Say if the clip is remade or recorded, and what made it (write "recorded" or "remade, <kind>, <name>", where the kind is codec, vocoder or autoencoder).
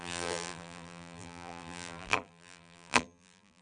remade, vocoder, BigVGAN v2